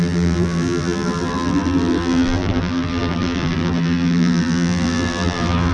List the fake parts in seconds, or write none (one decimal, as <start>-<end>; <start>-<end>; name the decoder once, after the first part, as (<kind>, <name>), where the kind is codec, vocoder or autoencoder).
0.0-5.7 (vocoder, BigVGAN v2)